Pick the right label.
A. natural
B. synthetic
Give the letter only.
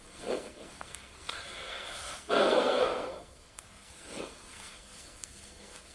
B